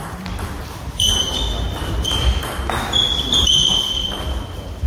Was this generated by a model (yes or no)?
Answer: yes